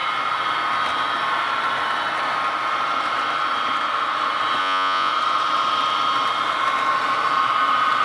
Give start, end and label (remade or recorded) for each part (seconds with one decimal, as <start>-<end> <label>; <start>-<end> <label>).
0.0-4.6 recorded; 4.6-5.1 remade; 5.1-8.0 recorded